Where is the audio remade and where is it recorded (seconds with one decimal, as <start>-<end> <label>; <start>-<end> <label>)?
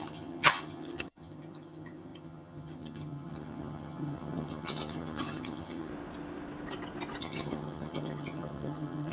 0.0-5.9 remade; 5.9-7.2 recorded; 7.2-9.1 remade